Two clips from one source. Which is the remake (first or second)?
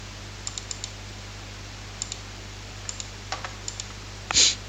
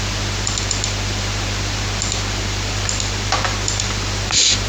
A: second